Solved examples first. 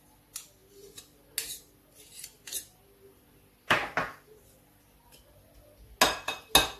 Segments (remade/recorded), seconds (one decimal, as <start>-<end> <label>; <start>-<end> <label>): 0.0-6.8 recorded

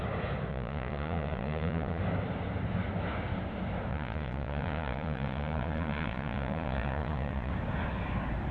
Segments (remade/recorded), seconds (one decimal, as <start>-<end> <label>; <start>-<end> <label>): 0.0-0.5 recorded; 0.5-2.0 remade; 2.0-3.9 recorded; 3.9-7.5 remade; 7.5-8.5 recorded

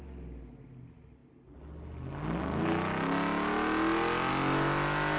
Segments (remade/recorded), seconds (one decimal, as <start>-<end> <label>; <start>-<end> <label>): 0.0-5.2 recorded